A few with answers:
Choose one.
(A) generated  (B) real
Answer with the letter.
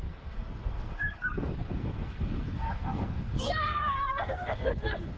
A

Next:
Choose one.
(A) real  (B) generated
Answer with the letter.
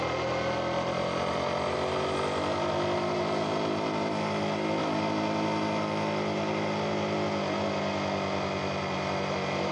A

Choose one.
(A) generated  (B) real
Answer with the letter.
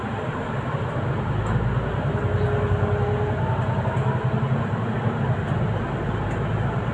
B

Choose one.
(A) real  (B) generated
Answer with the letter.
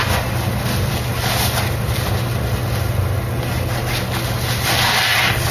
A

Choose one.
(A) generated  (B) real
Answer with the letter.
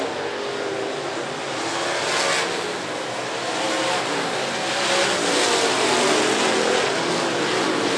B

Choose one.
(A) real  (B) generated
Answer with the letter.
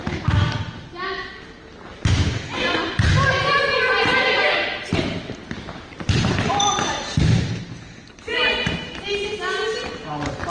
A